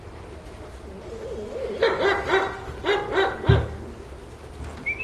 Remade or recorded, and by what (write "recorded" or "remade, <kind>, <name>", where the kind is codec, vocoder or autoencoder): recorded